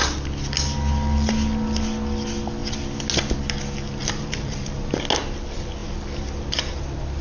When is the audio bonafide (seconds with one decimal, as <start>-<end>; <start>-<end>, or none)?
0.0-4.0; 4.9-7.2